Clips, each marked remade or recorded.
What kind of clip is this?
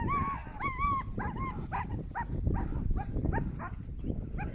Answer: remade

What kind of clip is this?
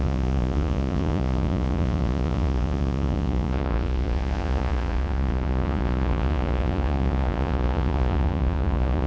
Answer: remade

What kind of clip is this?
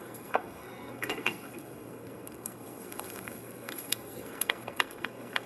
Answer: remade